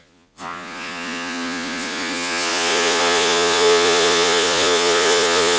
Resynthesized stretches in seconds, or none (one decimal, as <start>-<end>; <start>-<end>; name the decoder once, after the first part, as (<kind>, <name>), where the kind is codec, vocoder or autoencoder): 0.0-5.6 (vocoder, Vocos)